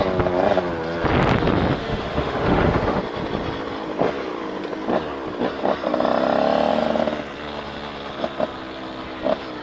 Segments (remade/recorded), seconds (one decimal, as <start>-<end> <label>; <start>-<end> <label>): 0.0-1.8 recorded; 1.8-3.0 remade; 3.0-9.6 recorded